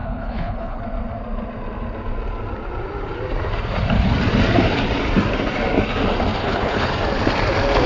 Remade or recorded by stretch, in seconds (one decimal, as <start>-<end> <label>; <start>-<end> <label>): 0.0-0.8 remade; 0.8-6.4 recorded; 6.4-6.9 remade; 6.9-7.9 recorded